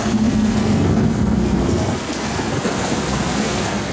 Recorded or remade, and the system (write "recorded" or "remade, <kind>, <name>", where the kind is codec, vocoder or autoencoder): remade, codec, SNAC